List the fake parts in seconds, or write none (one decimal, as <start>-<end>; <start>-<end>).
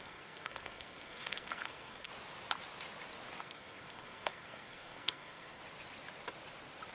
0.0-2.1; 3.4-5.6